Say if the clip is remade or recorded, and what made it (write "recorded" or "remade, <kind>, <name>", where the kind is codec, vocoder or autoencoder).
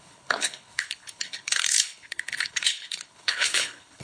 remade, codec, HILCodec